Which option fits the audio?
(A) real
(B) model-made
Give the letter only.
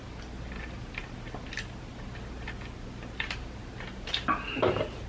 B